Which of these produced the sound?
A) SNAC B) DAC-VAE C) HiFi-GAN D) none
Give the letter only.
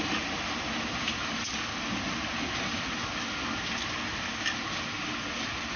D